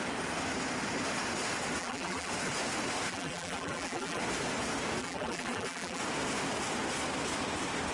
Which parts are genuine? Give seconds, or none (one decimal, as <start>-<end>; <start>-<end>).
0.0-1.8; 2.3-3.1; 4.2-5.0; 6.0-7.9